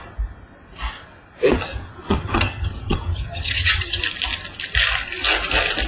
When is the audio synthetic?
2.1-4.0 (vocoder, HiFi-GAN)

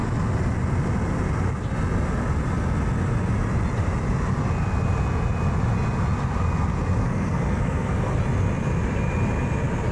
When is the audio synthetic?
7.0-8.2 (codec, SNAC)